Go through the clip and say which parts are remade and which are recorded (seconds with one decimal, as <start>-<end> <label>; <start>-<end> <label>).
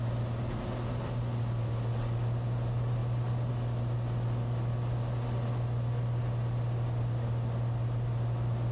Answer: 0.0-8.7 recorded